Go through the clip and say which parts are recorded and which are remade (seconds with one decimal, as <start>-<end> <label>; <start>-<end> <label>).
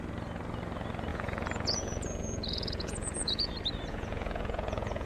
0.0-1.1 recorded; 1.1-3.5 remade; 3.5-3.9 recorded; 3.9-5.1 remade